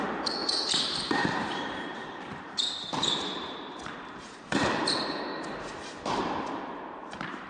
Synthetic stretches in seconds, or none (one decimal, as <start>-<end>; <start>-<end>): 0.0-5.3; 6.7-7.5